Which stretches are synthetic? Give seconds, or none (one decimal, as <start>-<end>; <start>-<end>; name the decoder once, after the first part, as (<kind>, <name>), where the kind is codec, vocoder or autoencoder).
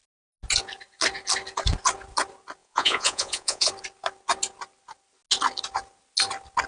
2.6-3.7 (vocoder, Vocos)